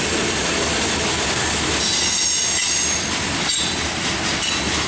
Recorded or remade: recorded